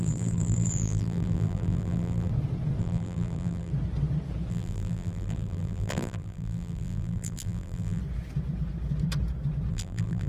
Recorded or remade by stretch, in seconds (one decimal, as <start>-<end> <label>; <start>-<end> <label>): 0.0-2.3 remade; 2.3-2.8 recorded; 2.8-3.7 remade; 3.7-4.5 recorded; 4.5-8.0 remade; 8.0-9.7 recorded; 9.7-10.3 remade